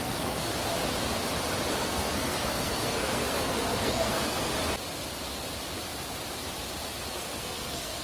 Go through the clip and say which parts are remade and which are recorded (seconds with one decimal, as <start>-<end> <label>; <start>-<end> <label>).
0.0-0.5 remade; 0.5-1.7 recorded; 1.7-4.5 remade; 4.5-7.1 recorded; 7.1-8.0 remade